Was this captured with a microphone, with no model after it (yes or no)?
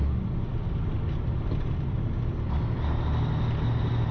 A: yes